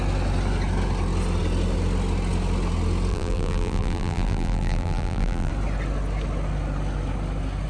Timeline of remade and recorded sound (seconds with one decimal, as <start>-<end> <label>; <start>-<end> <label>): 0.0-3.1 recorded; 3.1-5.5 remade; 5.5-7.7 recorded